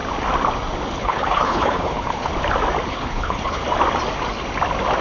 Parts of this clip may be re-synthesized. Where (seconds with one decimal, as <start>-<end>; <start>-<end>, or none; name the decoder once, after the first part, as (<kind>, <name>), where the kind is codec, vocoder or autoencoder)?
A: 1.0-2.3 (codec, HILCodec); 2.9-3.6